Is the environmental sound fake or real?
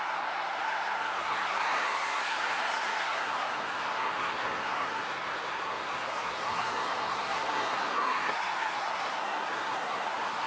fake